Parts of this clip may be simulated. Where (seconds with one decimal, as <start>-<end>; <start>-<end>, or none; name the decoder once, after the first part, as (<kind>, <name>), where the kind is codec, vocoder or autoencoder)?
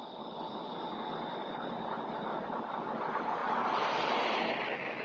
1.4-2.1 (vocoder, BigVGAN v2); 3.4-4.4